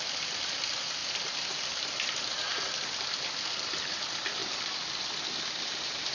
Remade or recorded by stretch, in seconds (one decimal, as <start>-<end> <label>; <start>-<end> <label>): 0.0-4.4 remade; 4.4-5.2 recorded; 5.2-6.1 remade